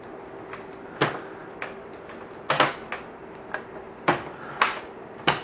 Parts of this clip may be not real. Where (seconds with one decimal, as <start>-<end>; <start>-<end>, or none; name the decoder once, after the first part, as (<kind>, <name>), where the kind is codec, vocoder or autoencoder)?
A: none